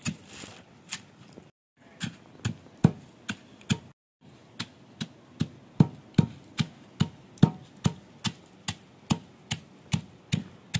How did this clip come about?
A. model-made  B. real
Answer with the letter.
B